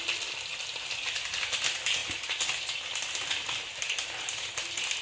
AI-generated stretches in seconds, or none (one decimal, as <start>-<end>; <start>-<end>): none